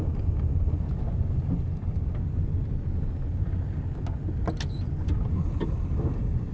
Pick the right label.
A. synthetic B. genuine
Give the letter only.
B